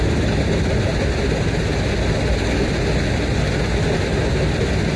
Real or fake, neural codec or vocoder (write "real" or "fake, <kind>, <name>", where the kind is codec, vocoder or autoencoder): real